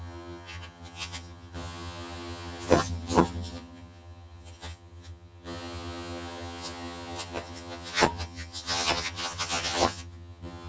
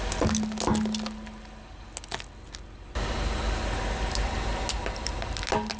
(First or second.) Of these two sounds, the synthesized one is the first